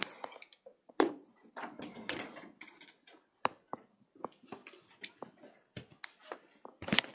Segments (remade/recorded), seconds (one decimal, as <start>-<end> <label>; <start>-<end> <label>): 0.0-0.7 recorded; 0.7-2.9 remade; 2.9-7.1 recorded